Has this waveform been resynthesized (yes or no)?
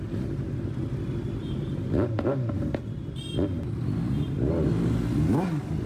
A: no